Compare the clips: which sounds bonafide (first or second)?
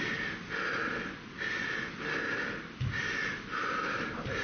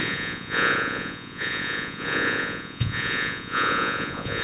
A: first